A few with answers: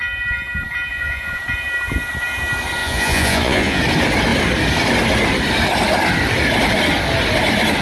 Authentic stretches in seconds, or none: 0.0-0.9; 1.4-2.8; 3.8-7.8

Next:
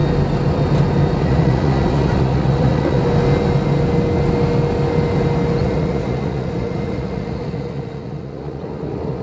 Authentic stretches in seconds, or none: 0.0-1.2; 3.0-5.6